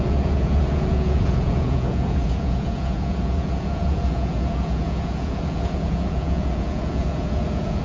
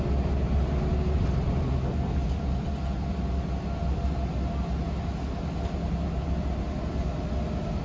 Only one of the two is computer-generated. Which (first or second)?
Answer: first